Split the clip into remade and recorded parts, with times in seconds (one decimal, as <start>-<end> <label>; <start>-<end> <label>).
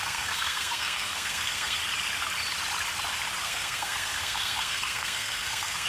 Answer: 0.0-1.8 remade; 1.8-3.4 recorded; 3.4-5.9 remade